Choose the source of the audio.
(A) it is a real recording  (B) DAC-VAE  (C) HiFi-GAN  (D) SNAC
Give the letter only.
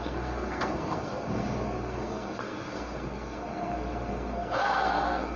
D